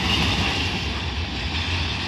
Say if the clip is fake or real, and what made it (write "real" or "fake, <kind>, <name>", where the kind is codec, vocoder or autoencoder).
real